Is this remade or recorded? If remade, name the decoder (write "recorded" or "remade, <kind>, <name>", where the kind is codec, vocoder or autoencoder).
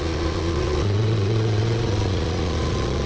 remade, vocoder, Vocos